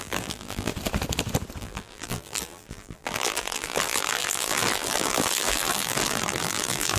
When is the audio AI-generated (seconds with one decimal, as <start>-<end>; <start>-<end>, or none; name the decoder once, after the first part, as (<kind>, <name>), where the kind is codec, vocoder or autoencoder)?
0.0-0.7 (vocoder, BigVGAN v2); 1.6-7.0